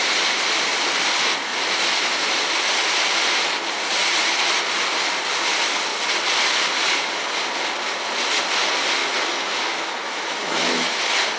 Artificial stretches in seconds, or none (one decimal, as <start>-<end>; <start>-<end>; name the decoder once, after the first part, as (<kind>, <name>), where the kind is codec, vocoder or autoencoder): 9.0-11.0 (autoencoder, DAC-VAE)